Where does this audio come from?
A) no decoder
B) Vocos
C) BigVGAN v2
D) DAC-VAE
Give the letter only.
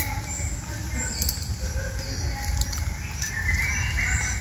A